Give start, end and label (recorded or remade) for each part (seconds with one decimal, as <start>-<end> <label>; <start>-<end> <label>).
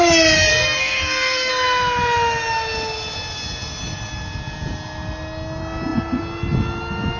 0.0-0.5 recorded; 0.5-1.5 remade; 1.5-7.2 recorded